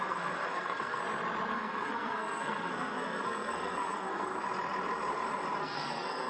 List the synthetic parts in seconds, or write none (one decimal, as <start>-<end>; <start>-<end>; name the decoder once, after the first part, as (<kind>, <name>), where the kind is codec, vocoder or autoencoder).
0.0-1.0 (codec, SNAC); 1.5-4.3; 5.6-6.3